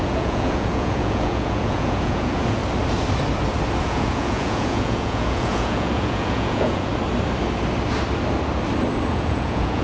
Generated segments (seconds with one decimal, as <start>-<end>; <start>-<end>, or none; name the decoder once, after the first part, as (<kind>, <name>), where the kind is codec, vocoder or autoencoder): 0.0-2.6 (vocoder, Vocos); 3.8-6.9; 9.1-9.8